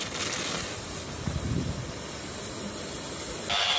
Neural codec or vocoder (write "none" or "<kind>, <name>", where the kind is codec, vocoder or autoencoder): none